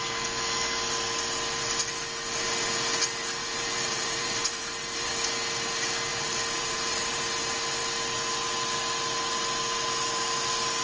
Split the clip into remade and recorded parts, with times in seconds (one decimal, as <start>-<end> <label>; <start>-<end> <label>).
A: 0.0-3.4 recorded; 3.4-5.1 remade; 5.1-6.1 recorded; 6.1-7.3 remade; 7.3-10.8 recorded